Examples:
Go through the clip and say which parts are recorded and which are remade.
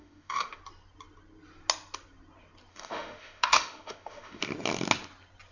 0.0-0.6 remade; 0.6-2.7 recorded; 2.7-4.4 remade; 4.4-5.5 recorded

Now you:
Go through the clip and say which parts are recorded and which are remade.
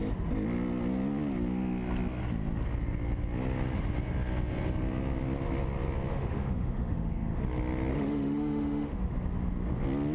0.0-6.1 recorded; 6.1-7.4 remade; 7.4-7.9 recorded; 7.9-9.1 remade; 9.1-10.1 recorded